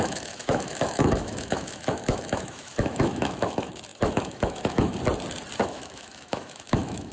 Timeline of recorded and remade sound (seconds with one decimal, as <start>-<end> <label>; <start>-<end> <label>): 0.0-5.0 remade; 5.0-5.6 recorded; 5.6-7.1 remade